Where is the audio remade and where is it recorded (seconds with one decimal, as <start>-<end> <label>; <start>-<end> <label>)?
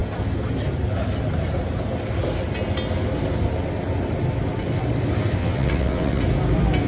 0.0-5.4 recorded; 5.4-6.2 remade; 6.2-6.9 recorded